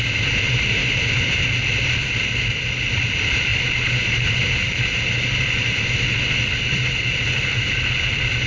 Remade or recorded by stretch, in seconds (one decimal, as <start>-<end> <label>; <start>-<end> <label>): 0.0-3.5 recorded; 3.5-4.8 remade; 4.8-8.5 recorded

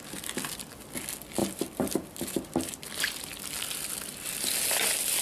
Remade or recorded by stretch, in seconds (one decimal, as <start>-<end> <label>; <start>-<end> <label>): 0.0-1.4 recorded; 1.4-4.5 remade; 4.5-5.2 recorded

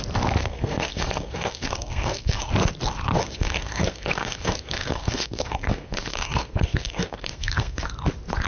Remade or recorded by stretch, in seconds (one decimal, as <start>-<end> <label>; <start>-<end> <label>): 0.0-0.4 recorded; 0.4-2.5 remade; 2.5-3.1 recorded; 3.1-7.9 remade; 7.9-8.5 recorded

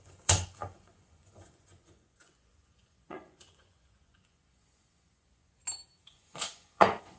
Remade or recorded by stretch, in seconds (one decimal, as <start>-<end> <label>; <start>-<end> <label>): 0.0-5.6 remade; 5.6-6.1 recorded; 6.1-7.2 remade

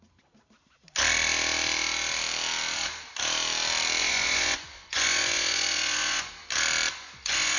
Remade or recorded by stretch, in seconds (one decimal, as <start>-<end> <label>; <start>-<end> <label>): 0.0-4.0 recorded; 4.0-6.3 remade; 6.3-7.0 recorded; 7.0-7.6 remade

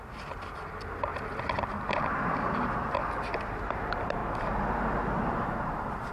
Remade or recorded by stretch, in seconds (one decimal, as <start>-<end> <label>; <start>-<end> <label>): 0.0-1.1 remade; 1.1-3.5 recorded; 3.5-4.2 remade; 4.2-5.2 recorded; 5.2-6.1 remade

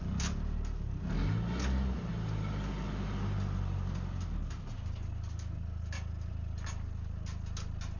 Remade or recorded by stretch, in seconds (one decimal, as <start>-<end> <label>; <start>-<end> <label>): 0.0-8.0 recorded